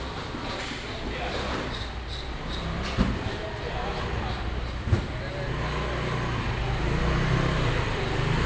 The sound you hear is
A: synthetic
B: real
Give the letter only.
B